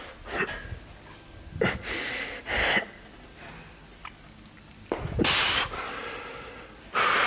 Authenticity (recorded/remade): recorded